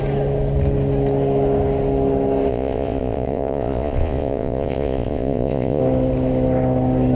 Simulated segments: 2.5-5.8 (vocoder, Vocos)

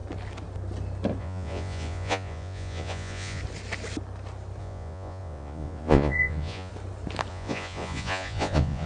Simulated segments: 1.2-3.4 (vocoder, Vocos); 4.6-6.7; 7.3-8.9

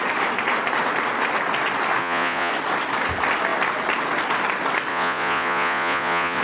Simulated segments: 2.0-2.5 (vocoder, Vocos); 4.9-6.4

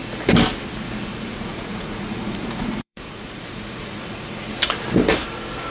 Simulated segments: 1.1-4.5 (vocoder, Vocos)

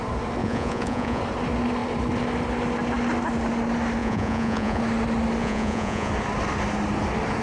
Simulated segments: 0.4-1.2 (vocoder, Vocos); 4.0-4.8; 5.4-6.1

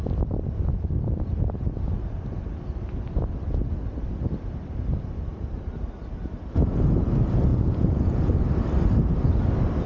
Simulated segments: 7.5-8.4 (vocoder, Vocos)

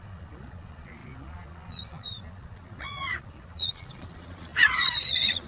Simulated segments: 0.0-5.5 (vocoder, Vocos)